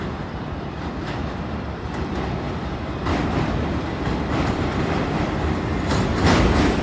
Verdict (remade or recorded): remade